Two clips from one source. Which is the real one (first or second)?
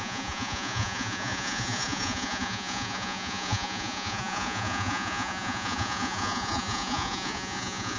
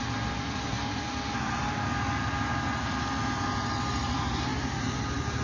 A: second